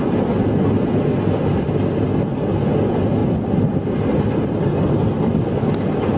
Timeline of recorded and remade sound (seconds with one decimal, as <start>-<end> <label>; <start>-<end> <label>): 0.0-6.2 recorded